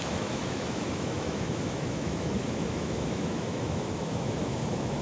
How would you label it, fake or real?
fake